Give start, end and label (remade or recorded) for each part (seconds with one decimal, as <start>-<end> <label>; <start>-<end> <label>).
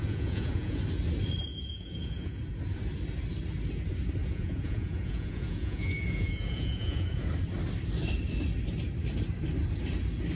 0.0-0.8 remade; 0.8-1.5 recorded; 1.5-2.4 remade; 2.4-4.2 recorded; 4.2-7.3 remade; 7.3-10.4 recorded